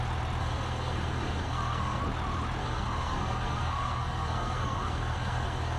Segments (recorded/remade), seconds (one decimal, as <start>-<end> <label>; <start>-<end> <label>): 0.0-0.4 recorded; 0.4-2.0 remade; 2.0-2.6 recorded; 2.6-5.8 remade